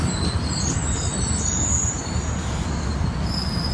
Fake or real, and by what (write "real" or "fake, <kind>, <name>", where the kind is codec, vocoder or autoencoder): real